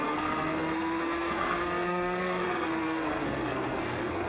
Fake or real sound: fake